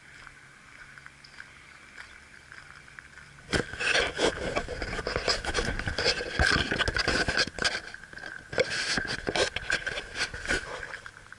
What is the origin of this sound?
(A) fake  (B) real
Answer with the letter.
B